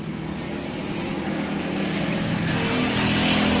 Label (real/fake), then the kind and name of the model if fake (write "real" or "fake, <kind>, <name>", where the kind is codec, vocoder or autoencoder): real